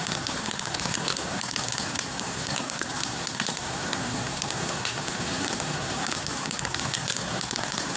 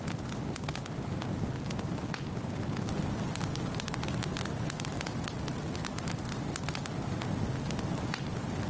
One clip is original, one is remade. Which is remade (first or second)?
first